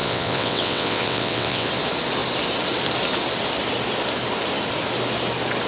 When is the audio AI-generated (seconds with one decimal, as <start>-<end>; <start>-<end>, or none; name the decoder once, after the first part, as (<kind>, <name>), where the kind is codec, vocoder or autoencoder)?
0.0-1.7 (vocoder, WaveNeXt)